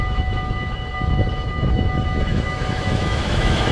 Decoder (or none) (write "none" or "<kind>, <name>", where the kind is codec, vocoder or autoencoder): autoencoder, DAC-VAE